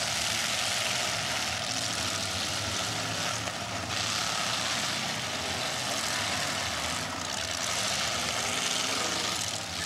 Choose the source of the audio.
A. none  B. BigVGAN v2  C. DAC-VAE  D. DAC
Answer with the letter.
A